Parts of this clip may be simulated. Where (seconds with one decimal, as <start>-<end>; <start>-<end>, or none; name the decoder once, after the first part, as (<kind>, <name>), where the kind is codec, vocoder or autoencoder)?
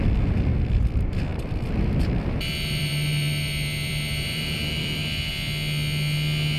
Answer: 1.3-5.3 (vocoder, BigVGAN v2)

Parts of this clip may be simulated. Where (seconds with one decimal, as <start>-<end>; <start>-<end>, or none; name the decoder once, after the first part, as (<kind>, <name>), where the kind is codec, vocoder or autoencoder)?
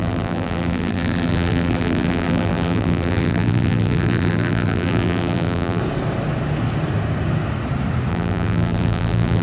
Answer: 0.0-5.8 (vocoder, BigVGAN v2); 8.1-9.4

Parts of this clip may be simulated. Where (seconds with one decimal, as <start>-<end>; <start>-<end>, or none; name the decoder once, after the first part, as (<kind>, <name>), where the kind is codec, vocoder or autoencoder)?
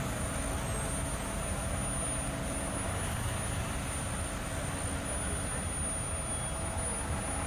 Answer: none